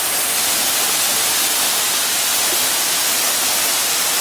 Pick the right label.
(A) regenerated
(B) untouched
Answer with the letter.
B